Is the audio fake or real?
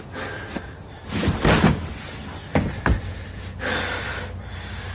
real